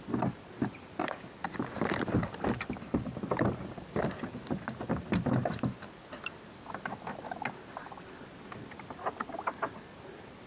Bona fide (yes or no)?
yes